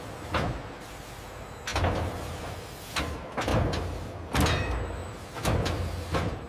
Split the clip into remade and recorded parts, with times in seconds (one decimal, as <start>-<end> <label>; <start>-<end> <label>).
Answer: 0.0-6.5 recorded